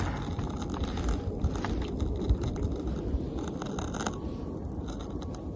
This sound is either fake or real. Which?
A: real